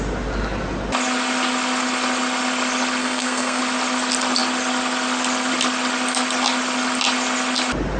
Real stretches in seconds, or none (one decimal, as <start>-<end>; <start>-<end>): 0.0-3.0; 3.6-8.0